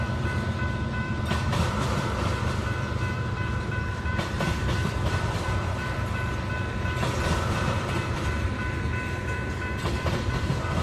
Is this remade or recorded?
remade